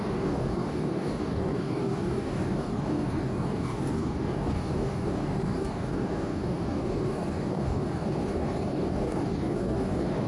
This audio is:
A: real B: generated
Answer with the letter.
B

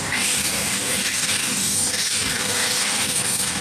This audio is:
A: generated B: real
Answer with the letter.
A